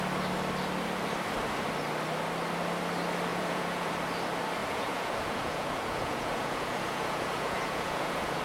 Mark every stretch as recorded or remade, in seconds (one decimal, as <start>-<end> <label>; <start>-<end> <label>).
0.0-3.3 recorded; 3.3-3.9 remade; 3.9-4.6 recorded; 4.6-8.4 remade